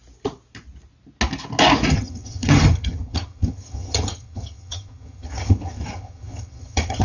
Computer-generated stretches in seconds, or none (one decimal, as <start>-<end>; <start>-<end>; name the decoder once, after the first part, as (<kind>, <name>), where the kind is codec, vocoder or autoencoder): 1.9-7.0 (vocoder, HiFi-GAN)